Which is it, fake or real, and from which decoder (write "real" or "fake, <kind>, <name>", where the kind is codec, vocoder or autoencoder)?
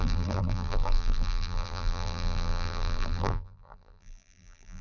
fake, vocoder, BigVGAN v2